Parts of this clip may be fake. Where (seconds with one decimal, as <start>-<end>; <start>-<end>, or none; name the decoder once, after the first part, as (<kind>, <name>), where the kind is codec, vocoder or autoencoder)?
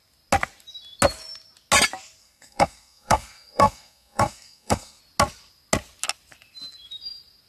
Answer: 2.2-5.0 (codec, SNAC)